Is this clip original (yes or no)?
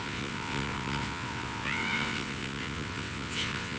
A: no